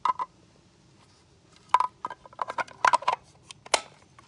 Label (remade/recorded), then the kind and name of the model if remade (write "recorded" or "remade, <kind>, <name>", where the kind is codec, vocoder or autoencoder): recorded